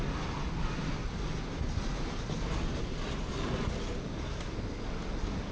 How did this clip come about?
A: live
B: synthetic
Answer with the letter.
A